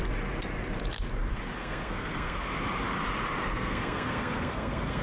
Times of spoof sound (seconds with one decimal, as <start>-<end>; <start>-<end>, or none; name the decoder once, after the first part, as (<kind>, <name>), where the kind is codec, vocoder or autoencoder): 1.6-2.5 (codec, SNAC); 3.5-5.0